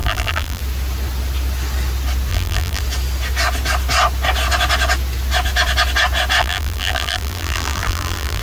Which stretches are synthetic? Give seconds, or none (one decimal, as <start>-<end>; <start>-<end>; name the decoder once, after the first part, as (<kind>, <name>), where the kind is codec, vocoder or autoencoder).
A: 0.0-0.6 (vocoder, BigVGAN v2); 2.3-2.8; 6.4-8.4